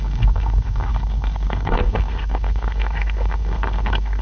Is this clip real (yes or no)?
no